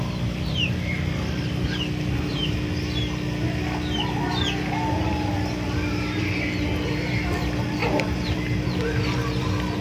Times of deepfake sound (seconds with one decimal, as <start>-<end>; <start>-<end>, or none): 7.8-8.4